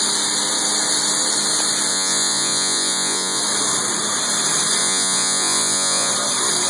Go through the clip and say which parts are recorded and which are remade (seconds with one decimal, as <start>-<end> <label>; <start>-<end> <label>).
0.0-1.9 recorded; 1.9-3.4 remade; 3.4-4.8 recorded; 4.8-6.1 remade; 6.1-6.7 recorded